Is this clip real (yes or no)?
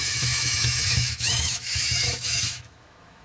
no